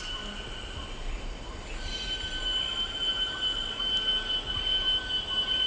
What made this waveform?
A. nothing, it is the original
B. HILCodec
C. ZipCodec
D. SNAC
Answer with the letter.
A